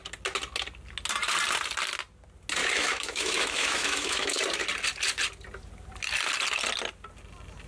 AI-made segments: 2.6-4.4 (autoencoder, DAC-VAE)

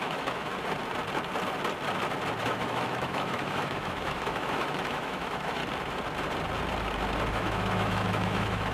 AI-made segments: 0.0-0.5 (autoencoder, DAC-VAE); 2.4-5.6; 7.3-8.7

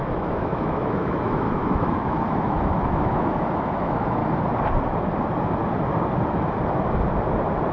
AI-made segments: 0.0-4.2 (autoencoder, DAC-VAE)

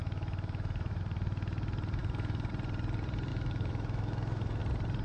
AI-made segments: 0.0-1.0 (autoencoder, DAC-VAE); 2.0-2.5; 3.3-4.6

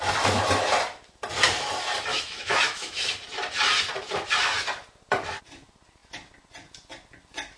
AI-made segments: 2.1-3.1 (autoencoder, DAC-VAE)

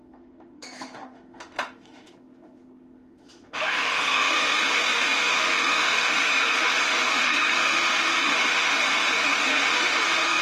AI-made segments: 0.0-10.4 (autoencoder, DAC-VAE)

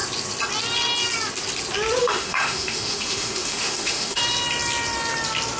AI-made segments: 2.0-4.2 (autoencoder, DAC-VAE)

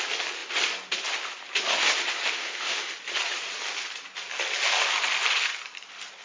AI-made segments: 2.4-2.9 (autoencoder, DAC-VAE)